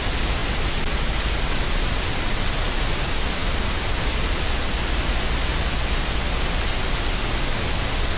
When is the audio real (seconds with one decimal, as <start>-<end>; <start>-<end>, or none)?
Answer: 0.0-8.2